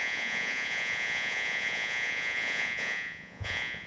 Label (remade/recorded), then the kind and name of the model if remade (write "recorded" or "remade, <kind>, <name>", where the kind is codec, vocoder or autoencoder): remade, vocoder, Vocos